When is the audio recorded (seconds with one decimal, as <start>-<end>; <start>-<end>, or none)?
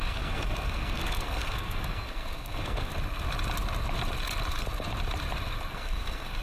2.9-5.7